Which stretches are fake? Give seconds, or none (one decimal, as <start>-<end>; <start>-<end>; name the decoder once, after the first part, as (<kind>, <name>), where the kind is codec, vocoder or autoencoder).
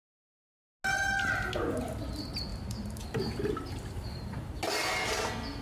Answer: 2.5-4.5 (vocoder, BigVGAN v2)